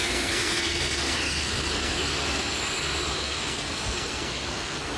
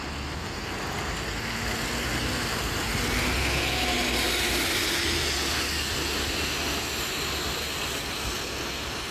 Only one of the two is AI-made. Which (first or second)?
first